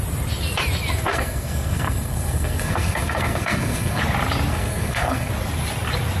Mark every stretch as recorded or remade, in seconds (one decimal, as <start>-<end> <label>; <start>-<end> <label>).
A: 0.0-1.1 recorded; 1.1-4.0 remade; 4.0-4.5 recorded; 4.5-5.3 remade; 5.3-6.2 recorded